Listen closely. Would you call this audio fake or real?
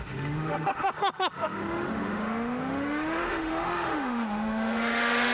fake